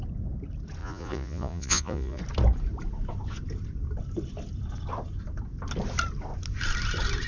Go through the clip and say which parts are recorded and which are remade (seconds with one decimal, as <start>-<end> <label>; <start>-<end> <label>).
0.0-0.8 recorded; 0.8-2.2 remade; 2.2-7.3 recorded